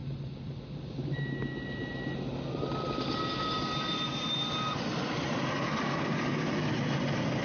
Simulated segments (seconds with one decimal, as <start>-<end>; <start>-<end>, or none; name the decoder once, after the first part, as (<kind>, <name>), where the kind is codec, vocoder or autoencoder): none